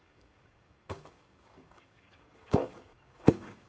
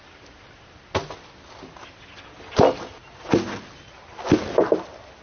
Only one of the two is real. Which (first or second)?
second